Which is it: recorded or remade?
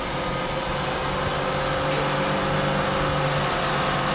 recorded